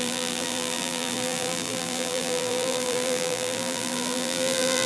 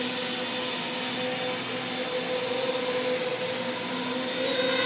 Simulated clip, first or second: first